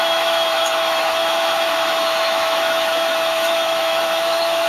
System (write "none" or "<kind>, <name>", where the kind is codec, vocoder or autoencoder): autoencoder, DAC-VAE